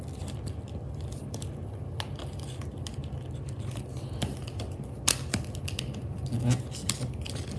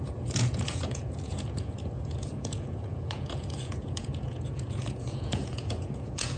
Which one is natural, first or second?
first